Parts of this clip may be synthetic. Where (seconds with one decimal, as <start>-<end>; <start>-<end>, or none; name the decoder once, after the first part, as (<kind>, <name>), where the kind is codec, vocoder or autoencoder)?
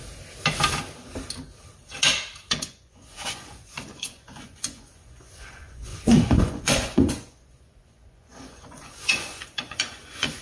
2.5-10.4 (vocoder, Vocos)